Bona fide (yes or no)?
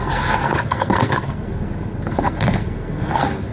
no